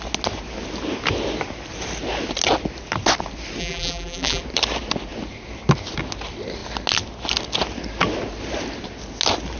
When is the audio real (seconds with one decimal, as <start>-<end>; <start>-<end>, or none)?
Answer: 0.0-3.6; 4.4-9.6